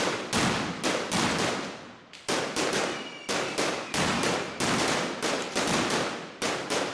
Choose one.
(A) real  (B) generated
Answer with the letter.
A